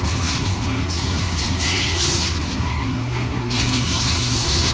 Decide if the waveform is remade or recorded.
remade